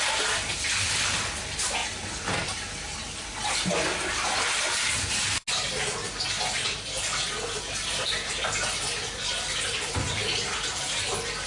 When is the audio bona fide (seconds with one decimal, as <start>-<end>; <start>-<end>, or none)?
0.0-11.5